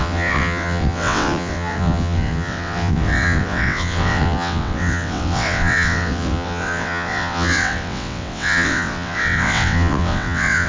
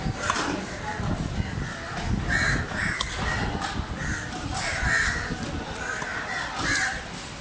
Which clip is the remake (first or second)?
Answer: first